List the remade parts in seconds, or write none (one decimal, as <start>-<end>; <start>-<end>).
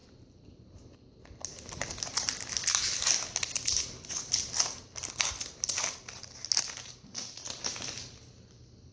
none